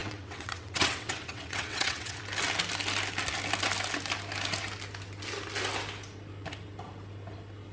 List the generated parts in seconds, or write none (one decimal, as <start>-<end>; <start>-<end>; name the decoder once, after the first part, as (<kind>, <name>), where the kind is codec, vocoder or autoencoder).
0.0-2.2 (vocoder, WaveNeXt)